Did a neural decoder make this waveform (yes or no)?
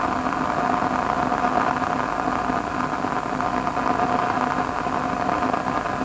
no